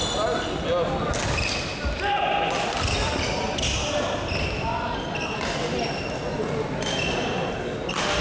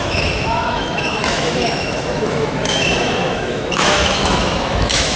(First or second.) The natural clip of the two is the first